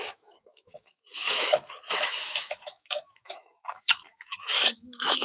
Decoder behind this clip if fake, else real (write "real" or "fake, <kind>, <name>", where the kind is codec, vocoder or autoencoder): fake, autoencoder, DAC-VAE